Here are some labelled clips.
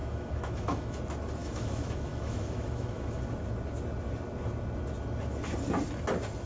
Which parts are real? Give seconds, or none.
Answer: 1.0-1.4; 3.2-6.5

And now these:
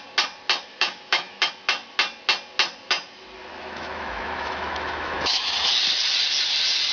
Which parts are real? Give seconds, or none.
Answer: 0.0-0.7; 1.5-3.5; 5.7-6.9

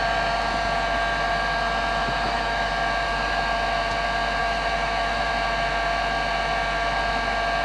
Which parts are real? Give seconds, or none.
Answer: 0.0-2.0; 2.7-4.4; 5.3-7.6

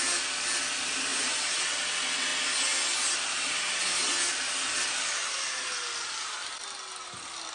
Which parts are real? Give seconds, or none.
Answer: 0.0-7.5

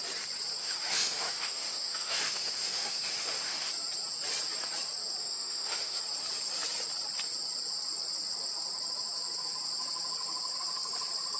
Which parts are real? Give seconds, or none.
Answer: 0.0-0.6; 3.7-5.2; 6.0-11.4

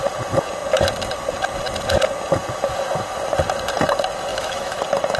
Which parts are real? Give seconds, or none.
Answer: 0.0-4.3; 4.8-5.2